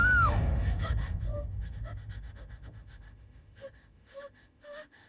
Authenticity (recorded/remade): remade